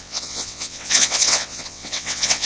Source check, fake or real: fake